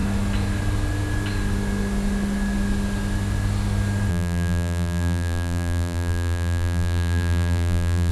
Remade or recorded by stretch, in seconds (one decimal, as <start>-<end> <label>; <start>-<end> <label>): 0.0-4.1 recorded; 4.1-8.1 remade